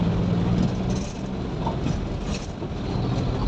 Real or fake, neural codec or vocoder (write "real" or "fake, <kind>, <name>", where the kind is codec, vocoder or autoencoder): real